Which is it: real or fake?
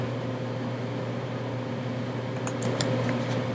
real